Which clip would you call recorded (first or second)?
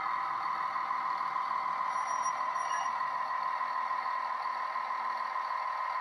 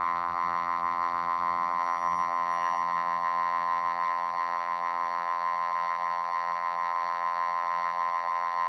first